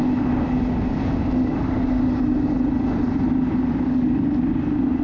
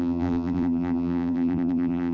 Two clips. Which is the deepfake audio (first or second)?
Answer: second